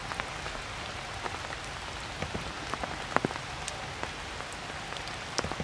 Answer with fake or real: real